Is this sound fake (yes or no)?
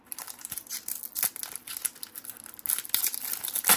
no